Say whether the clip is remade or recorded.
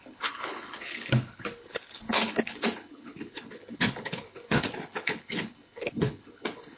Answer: remade